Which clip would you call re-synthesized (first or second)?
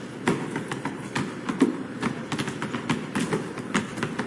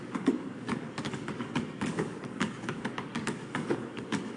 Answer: second